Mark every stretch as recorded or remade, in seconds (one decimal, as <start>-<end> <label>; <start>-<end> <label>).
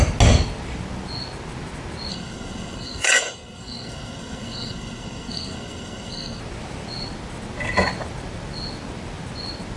0.0-2.1 recorded; 2.1-6.4 remade; 6.4-9.8 recorded